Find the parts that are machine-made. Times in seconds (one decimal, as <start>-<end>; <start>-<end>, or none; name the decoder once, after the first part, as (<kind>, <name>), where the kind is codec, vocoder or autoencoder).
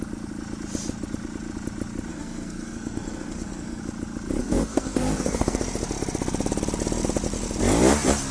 2.1-3.8 (codec, SNAC); 4.4-5.6